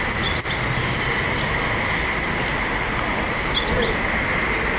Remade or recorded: recorded